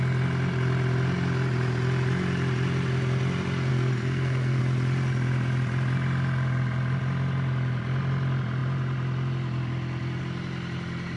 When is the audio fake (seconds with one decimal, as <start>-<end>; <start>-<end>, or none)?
3.7-4.6